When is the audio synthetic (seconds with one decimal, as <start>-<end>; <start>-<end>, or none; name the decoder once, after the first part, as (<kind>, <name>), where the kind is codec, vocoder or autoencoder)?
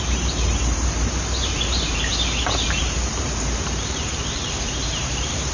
0.0-2.1 (vocoder, BigVGAN v2); 2.8-5.5